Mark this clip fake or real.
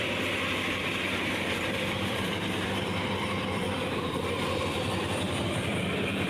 fake